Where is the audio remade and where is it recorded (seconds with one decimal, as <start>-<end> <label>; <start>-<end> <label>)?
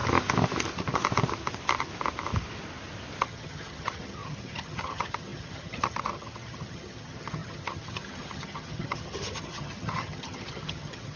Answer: 0.0-3.2 recorded; 3.2-11.2 remade